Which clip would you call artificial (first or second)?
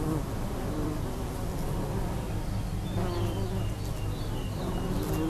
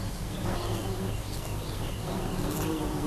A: second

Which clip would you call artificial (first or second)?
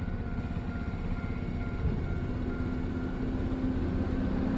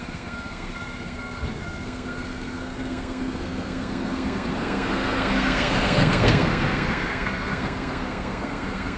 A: second